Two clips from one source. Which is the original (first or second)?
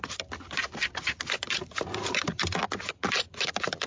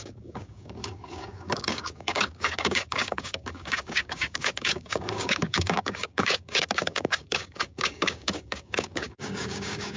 first